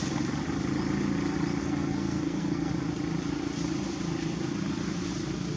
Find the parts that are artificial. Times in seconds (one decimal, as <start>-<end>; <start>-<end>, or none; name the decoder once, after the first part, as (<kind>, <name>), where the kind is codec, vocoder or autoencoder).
1.6-2.7 (codec, SNAC)